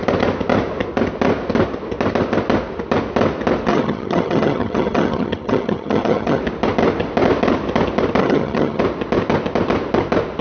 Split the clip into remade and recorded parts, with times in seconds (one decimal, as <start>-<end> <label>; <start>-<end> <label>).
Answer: 0.0-3.7 recorded; 3.7-6.4 remade; 6.4-8.2 recorded; 8.2-8.8 remade; 8.8-10.4 recorded